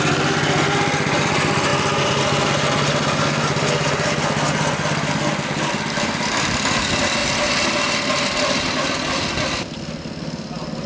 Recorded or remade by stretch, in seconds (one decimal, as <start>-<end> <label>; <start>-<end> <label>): 0.0-10.9 recorded